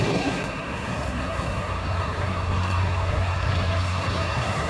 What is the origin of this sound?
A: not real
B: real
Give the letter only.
A